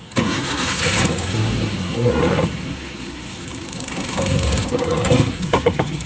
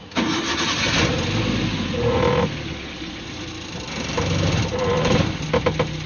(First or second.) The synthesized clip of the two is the first